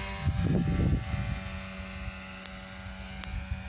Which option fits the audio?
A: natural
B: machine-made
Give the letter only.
A